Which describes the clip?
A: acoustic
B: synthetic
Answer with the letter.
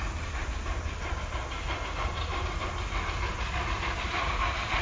A